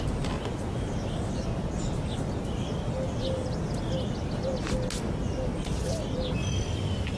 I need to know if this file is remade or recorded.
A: recorded